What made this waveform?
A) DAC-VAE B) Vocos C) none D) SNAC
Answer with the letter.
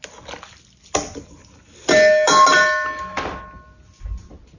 C